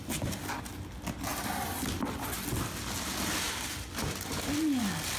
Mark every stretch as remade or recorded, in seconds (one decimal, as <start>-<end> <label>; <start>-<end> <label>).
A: 0.0-5.2 recorded